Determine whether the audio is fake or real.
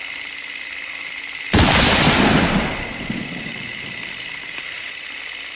real